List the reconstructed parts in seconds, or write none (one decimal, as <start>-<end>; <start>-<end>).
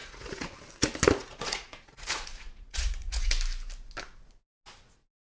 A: 0.0-0.5; 1.2-3.3